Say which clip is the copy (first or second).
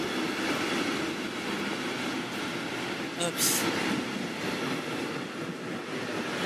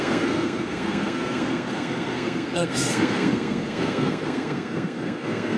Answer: second